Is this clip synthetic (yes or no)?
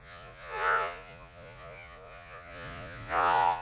yes